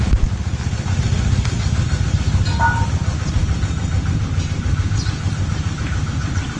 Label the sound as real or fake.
real